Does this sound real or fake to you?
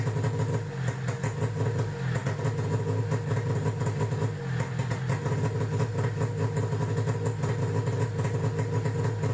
real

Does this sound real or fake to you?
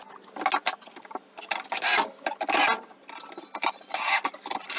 real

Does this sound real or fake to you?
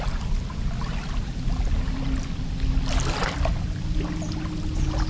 real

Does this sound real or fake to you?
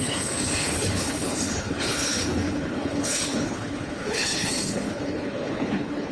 fake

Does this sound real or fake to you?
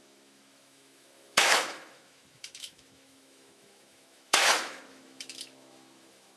fake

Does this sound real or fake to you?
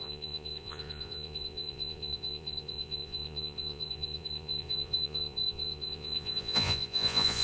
fake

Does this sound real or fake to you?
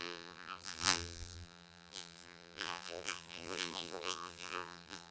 fake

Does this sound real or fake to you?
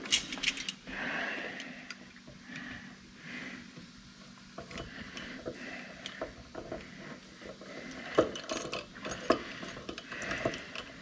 real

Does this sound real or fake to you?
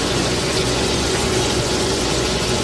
fake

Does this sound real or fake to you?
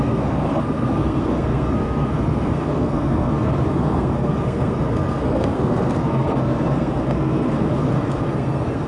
fake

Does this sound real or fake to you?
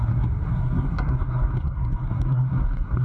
fake